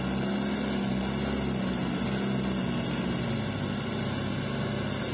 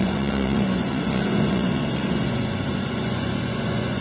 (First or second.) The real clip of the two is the first